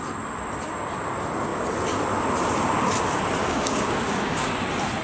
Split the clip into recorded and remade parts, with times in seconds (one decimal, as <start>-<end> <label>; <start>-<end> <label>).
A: 0.0-3.4 recorded; 3.4-4.5 remade; 4.5-5.0 recorded